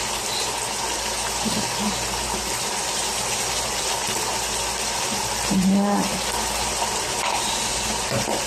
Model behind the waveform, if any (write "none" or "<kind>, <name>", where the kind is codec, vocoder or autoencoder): none